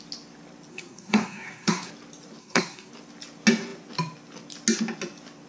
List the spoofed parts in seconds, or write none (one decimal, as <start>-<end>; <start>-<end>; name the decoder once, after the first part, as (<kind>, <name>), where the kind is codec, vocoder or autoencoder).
0.7-1.9 (codec, SNAC); 2.4-2.9